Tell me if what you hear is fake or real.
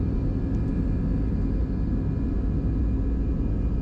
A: real